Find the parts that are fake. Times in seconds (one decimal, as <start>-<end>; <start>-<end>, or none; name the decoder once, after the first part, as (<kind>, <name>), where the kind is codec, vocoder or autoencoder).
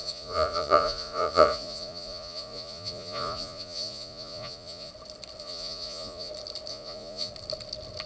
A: 0.0-4.9 (vocoder, Vocos); 5.4-6.3; 6.7-7.3